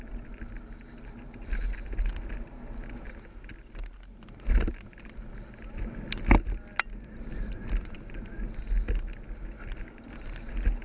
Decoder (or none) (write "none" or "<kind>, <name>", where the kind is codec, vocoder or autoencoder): none